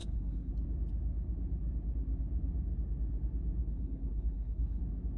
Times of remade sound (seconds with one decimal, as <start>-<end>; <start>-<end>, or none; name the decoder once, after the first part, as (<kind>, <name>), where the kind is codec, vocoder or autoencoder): 0.0-0.5 (codec, HILCodec); 3.6-4.8